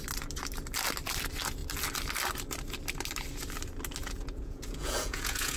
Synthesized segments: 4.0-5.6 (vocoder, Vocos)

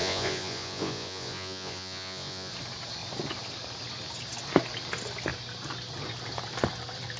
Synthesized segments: 0.0-2.5 (vocoder, Vocos)

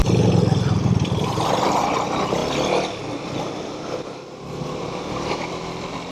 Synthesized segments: none

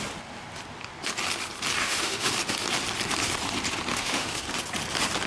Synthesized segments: 1.8-2.3 (autoencoder, DAC-VAE); 3.9-4.4

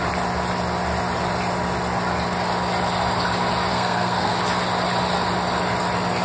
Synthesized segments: 3.7-4.3 (codec, SNAC)

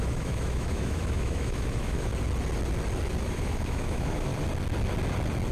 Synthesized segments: 0.0-2.1 (autoencoder, DAC-VAE); 3.2-4.3

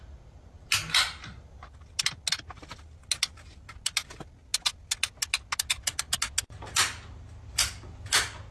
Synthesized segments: none

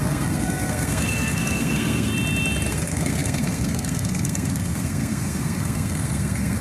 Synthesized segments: 0.0-2.1 (codec, SNAC); 2.7-6.6